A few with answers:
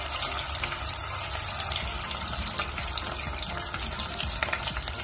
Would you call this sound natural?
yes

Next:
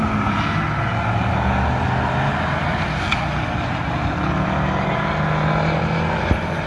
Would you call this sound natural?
yes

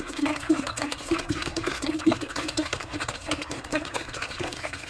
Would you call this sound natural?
no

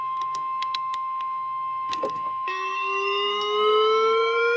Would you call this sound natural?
no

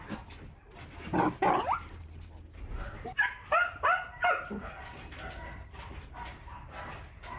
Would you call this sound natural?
yes